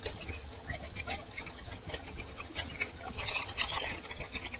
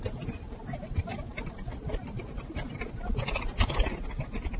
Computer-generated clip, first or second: first